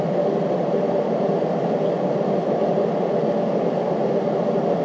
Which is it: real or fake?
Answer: real